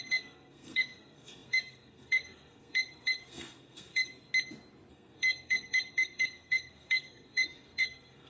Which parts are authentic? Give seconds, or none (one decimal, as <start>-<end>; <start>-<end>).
4.3-4.9